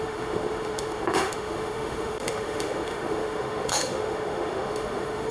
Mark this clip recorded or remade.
remade